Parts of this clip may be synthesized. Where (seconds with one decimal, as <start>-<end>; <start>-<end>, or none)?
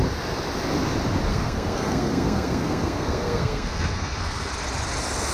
1.3-4.5